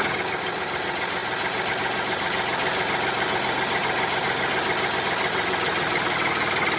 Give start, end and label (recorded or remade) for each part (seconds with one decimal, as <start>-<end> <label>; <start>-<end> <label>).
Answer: 0.0-6.8 recorded